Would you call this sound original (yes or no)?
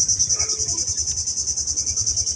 yes